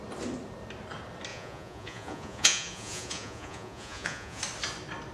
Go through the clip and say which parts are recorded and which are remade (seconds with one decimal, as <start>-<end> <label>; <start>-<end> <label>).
0.0-1.3 recorded; 1.3-4.4 remade; 4.4-5.1 recorded